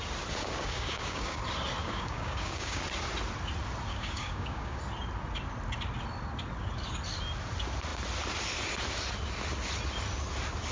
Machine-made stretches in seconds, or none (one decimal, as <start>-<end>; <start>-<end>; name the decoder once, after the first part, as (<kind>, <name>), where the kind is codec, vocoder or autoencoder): 0.4-1.4 (codec, DAC); 1.8-2.8; 3.9-4.8

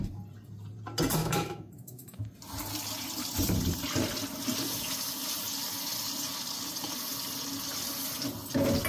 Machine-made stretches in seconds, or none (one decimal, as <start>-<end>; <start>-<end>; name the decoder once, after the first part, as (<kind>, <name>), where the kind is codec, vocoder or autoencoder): 1.2-2.3 (autoencoder, DAC-VAE)

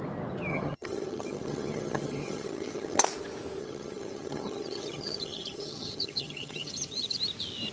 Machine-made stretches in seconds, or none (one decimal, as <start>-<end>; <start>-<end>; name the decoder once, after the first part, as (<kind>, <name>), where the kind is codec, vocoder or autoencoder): 0.5-3.0 (vocoder, HiFi-GAN); 3.6-7.2